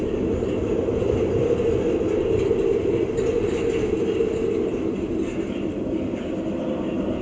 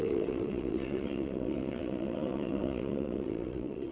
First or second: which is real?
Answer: first